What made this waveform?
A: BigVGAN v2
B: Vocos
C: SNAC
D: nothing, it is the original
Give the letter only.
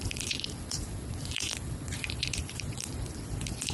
B